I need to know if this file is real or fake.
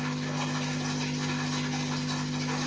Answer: real